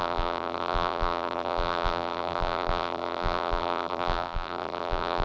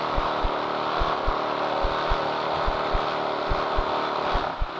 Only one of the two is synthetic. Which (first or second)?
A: first